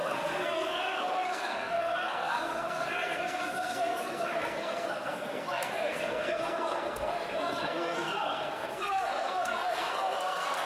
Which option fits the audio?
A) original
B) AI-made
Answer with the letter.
B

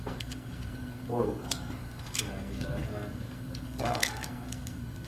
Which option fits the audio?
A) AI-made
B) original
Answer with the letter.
A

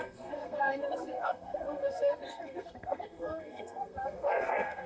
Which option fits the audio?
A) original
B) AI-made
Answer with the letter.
B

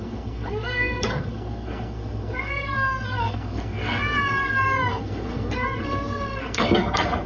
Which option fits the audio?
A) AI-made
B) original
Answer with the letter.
A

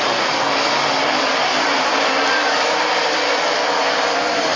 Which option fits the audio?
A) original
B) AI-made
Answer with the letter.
A